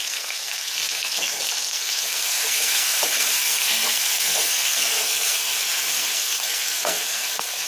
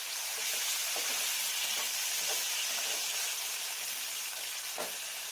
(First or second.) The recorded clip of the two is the second